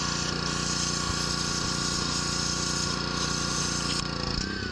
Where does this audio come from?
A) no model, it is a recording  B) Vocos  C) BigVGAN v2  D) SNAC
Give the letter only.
A